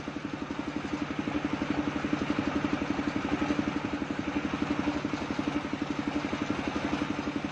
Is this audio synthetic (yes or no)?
no